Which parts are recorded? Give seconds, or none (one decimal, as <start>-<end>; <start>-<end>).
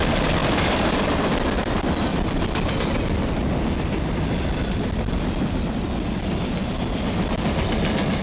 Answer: 0.0-0.4; 1.0-2.1; 2.7-8.2